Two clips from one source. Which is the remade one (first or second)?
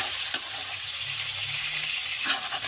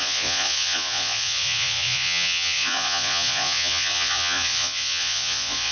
second